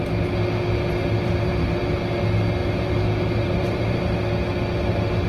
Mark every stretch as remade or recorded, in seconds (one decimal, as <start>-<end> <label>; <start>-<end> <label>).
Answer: 0.0-1.0 recorded; 1.0-1.8 remade; 1.8-2.6 recorded; 2.6-4.2 remade; 4.2-5.3 recorded